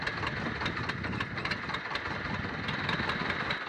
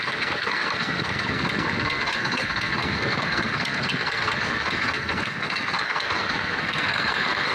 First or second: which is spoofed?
second